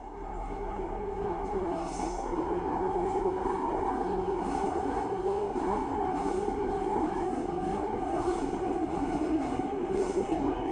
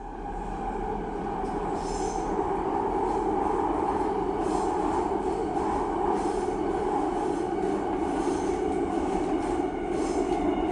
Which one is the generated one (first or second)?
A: first